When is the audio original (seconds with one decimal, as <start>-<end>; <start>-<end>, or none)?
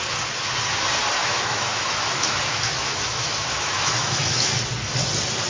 0.0-1.2; 4.5-5.5